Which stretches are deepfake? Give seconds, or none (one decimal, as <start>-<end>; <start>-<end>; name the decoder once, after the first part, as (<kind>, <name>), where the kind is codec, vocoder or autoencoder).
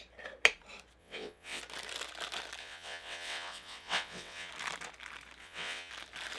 1.0-1.6 (vocoder, WaveNeXt); 2.6-4.5; 5.4-5.9